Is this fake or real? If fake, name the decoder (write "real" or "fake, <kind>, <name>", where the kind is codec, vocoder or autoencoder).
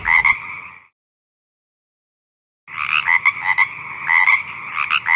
real